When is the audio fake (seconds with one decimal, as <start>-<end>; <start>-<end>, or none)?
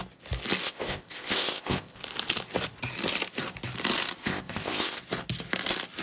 0.6-2.0; 4.2-5.0